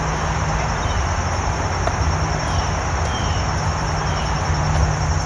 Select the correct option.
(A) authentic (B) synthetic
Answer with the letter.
A